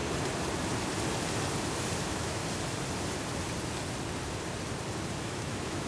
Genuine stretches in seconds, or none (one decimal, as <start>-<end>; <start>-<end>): 0.0-2.0; 2.4-5.2